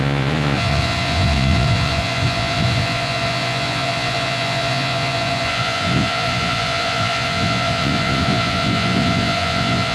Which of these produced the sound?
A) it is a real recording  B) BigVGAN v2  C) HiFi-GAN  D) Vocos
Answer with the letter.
D